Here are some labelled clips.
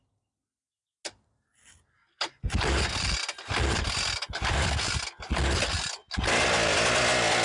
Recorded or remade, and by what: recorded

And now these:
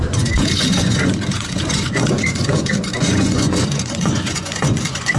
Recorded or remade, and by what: remade, vocoder, Vocos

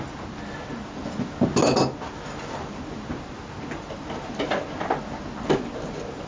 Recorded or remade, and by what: recorded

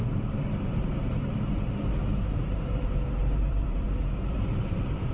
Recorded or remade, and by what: remade, vocoder, BigVGAN v2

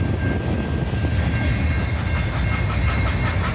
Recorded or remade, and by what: recorded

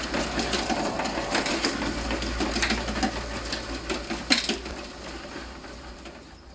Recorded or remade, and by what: recorded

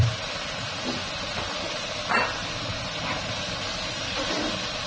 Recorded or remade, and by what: recorded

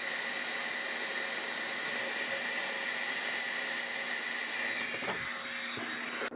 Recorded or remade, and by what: recorded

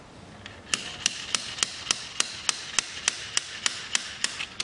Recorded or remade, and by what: recorded